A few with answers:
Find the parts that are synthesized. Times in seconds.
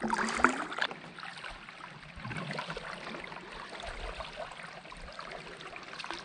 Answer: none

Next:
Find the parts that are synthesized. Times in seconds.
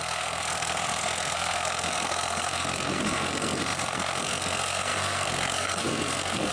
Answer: 0.0-6.5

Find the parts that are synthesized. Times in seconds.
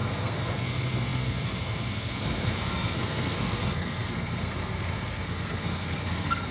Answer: 0.0-6.5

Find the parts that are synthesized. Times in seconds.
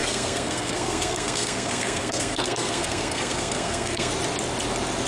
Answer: 0.0-4.1